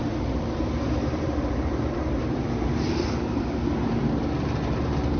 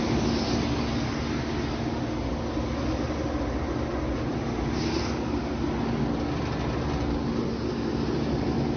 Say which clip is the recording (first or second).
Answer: second